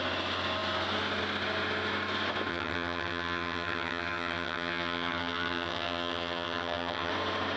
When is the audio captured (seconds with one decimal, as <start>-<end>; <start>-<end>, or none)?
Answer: 0.0-2.5; 7.1-7.6